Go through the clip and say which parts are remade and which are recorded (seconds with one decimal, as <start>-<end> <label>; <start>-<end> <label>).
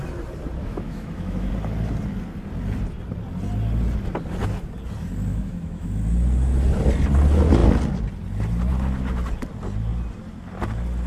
0.0-0.6 recorded; 0.6-1.5 remade; 1.5-5.3 recorded; 5.3-5.9 remade; 5.9-11.1 recorded